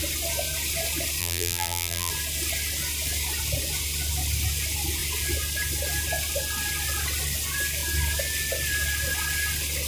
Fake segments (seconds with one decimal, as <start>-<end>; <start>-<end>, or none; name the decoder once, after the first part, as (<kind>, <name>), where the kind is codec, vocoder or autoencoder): 1.2-2.1 (vocoder, BigVGAN v2)